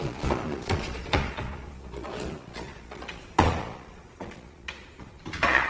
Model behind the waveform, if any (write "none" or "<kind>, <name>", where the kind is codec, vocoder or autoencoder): vocoder, Vocos